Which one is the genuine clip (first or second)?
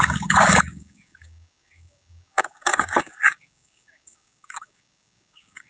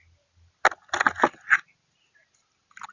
second